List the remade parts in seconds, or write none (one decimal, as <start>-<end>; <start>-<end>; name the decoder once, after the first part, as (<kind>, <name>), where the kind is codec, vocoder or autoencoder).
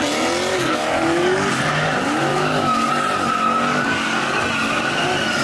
0.5-1.5 (codec, DAC); 2.3-2.9; 3.7-4.4